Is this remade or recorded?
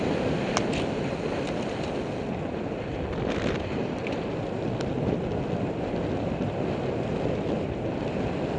recorded